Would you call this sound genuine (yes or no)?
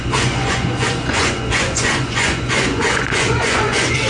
no